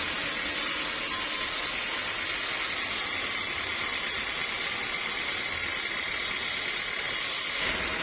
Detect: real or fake real